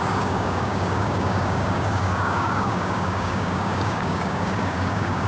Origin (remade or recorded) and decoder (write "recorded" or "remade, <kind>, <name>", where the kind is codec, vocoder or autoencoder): remade, codec, DAC